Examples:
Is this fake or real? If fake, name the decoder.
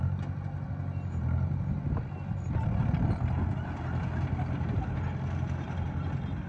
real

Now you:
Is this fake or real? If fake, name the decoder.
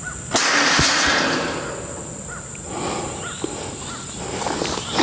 real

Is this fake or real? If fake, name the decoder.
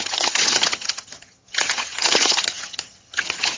fake, vocoder, HiFi-GAN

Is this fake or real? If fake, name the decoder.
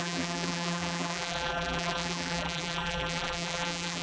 fake, vocoder, BigVGAN v2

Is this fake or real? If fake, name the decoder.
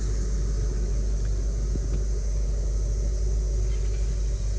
real